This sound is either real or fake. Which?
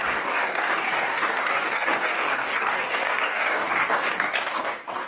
fake